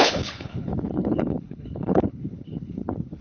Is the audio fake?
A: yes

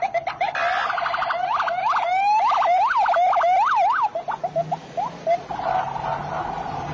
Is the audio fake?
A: no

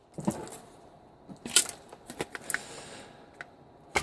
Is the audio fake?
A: no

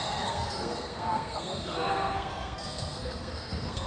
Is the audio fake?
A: yes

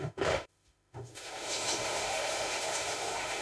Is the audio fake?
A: yes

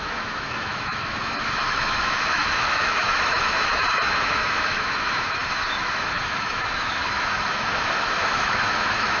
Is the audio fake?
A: yes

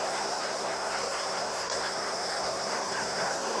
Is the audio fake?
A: yes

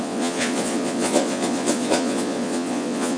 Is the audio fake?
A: yes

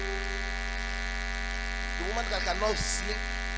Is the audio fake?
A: no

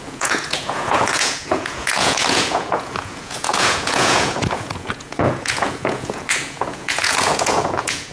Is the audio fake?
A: yes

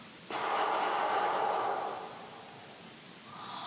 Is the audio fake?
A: no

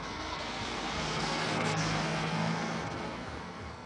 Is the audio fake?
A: yes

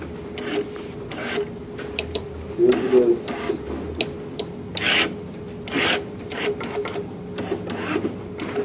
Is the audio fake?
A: no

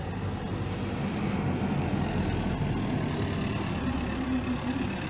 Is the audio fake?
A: no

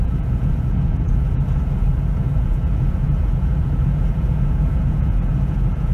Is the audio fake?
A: yes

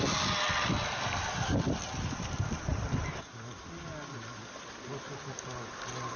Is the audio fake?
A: no